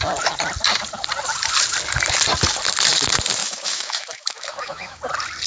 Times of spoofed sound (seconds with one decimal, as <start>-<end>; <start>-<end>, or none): 3.4-5.0